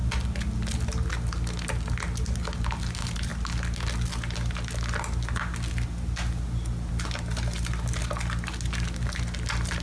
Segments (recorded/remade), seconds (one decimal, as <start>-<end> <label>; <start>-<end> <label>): 0.0-9.8 recorded